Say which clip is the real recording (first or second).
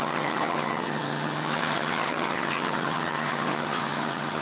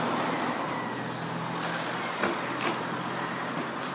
second